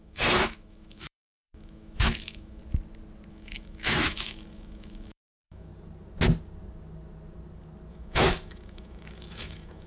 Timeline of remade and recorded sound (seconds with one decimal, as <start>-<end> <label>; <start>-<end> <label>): 0.0-2.6 remade; 2.6-3.3 recorded; 3.3-5.7 remade; 5.7-7.9 recorded; 7.9-9.9 remade